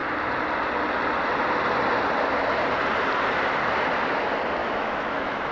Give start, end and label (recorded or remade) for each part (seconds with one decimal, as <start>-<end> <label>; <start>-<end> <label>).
0.0-4.6 recorded; 4.6-5.5 remade